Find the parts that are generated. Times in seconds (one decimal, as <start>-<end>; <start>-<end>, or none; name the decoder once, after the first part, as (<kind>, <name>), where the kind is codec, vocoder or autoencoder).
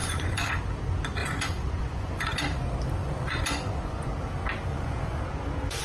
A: 0.0-0.6 (vocoder, Vocos); 1.2-2.4; 3.0-4.1; 4.7-5.2